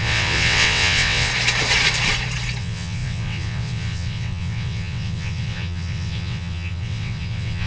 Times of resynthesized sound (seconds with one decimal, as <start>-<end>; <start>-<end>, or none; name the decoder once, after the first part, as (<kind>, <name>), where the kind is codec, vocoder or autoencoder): 0.0-1.3 (vocoder, WaveNeXt); 2.6-7.7